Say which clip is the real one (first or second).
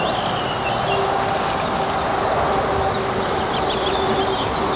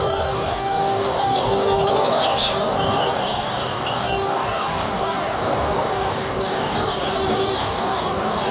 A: first